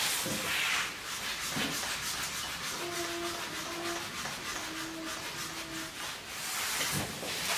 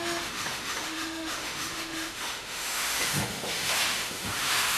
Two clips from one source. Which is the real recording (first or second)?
first